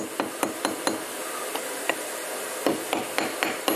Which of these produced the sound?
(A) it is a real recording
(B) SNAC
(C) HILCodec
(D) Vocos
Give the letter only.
A